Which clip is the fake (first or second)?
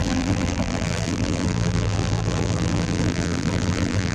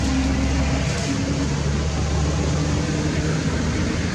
first